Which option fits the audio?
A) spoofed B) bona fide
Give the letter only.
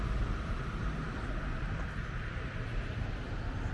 A